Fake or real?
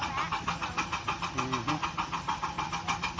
real